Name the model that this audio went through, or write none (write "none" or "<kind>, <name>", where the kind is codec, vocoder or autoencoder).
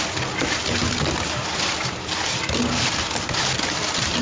none